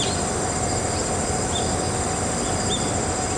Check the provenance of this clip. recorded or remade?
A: recorded